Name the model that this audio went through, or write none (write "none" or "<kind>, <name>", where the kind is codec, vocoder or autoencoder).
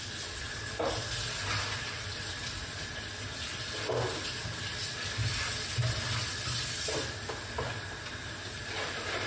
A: none